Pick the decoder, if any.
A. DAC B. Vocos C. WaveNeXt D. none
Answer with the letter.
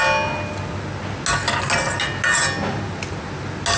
D